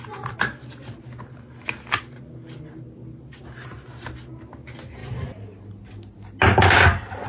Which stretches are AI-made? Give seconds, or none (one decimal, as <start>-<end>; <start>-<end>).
none